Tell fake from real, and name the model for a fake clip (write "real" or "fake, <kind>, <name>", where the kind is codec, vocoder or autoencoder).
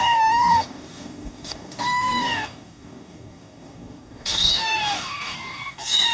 fake, codec, DAC